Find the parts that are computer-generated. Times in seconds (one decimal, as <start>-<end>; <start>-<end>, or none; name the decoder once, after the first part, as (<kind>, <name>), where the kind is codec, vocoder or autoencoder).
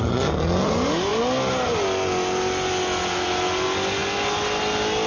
none